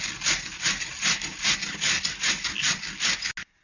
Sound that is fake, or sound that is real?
real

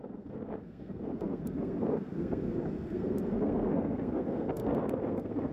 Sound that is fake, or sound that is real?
fake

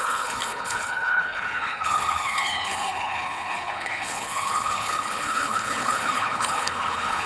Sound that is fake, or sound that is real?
fake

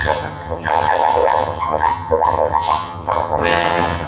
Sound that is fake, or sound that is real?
fake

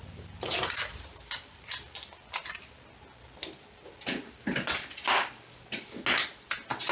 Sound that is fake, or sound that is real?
real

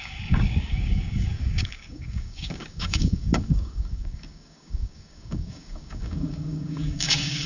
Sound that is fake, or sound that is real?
fake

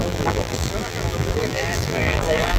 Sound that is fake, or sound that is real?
fake